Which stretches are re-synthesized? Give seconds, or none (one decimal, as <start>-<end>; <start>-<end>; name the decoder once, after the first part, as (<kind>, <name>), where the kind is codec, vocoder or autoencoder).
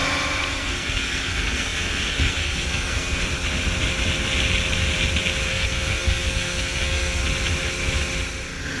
0.5-3.2 (codec, SNAC); 5.5-7.2